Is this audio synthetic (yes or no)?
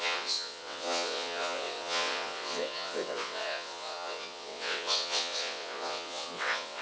yes